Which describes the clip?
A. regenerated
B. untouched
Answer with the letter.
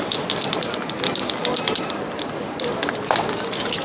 B